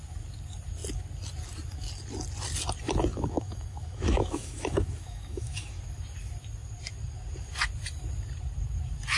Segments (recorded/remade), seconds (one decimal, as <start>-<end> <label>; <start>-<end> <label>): 0.0-3.1 recorded; 3.1-5.8 remade; 5.8-9.2 recorded